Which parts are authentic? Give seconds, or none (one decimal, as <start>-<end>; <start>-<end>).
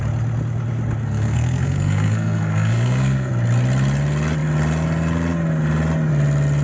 0.0-1.0; 3.3-6.6